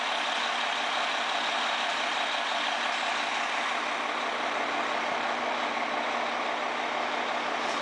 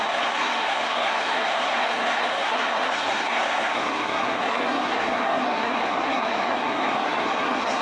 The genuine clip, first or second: first